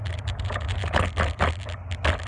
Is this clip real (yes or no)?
yes